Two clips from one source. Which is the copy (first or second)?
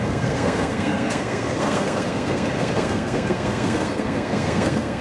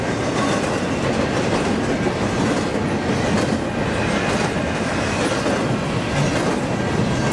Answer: first